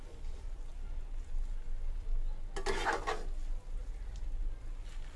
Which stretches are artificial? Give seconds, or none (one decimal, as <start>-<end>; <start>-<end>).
none